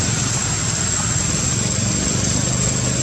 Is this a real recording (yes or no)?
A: yes